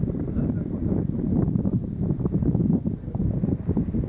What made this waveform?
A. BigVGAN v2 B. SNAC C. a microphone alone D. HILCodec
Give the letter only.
A